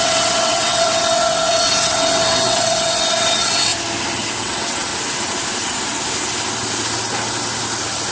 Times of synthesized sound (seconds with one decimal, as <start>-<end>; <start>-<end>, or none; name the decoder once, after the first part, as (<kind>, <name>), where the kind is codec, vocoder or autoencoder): 0.0-3.7 (vocoder, WaveNeXt); 4.4-4.9

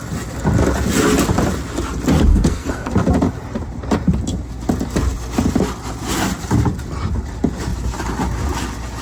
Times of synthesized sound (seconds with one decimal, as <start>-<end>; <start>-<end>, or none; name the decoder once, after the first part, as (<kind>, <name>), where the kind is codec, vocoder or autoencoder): 2.3-2.9 (codec, SNAC)

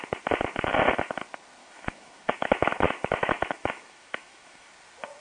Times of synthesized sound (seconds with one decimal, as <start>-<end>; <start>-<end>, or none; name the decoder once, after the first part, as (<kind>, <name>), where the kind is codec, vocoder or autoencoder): 1.6-4.7 (autoencoder, DAC-VAE)

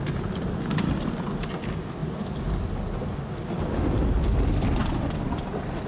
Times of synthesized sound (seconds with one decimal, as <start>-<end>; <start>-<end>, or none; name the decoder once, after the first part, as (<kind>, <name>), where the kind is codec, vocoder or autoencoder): none

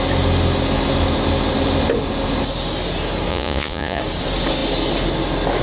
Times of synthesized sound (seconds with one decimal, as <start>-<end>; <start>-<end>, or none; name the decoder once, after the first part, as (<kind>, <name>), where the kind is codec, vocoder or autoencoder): 3.3-4.0 (vocoder, Vocos)

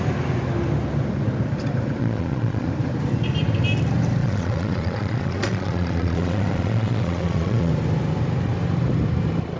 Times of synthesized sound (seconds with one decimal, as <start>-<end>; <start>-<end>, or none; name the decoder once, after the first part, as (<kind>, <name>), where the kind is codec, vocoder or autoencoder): 2.0-2.7 (vocoder, Vocos); 4.2-7.7